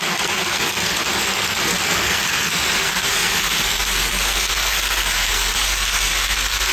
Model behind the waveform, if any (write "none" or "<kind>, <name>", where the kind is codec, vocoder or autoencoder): codec, SNAC